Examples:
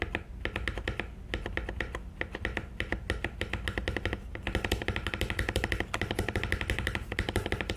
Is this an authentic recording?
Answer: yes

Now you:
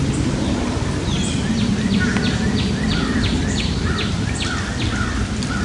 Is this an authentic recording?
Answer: yes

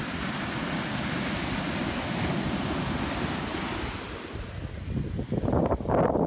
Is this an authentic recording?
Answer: yes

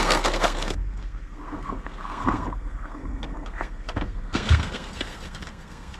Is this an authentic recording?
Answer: no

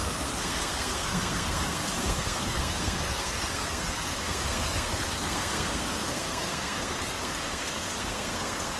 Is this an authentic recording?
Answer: no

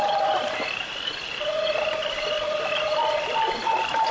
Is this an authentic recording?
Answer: yes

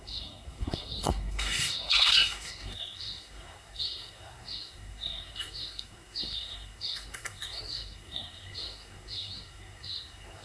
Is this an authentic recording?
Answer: no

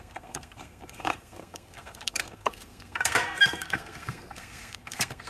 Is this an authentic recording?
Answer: no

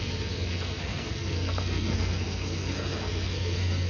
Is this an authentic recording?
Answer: no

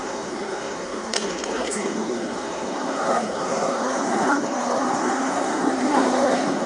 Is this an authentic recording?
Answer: no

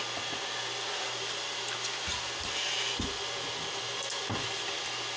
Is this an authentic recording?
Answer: yes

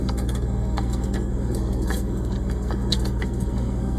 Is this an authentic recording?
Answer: no